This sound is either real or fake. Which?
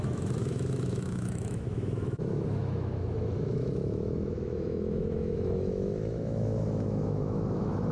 fake